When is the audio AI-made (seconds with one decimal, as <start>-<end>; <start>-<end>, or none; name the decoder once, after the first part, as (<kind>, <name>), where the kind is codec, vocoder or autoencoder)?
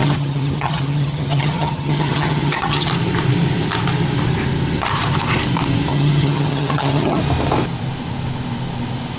0.0-2.9 (vocoder, HiFi-GAN); 5.9-7.2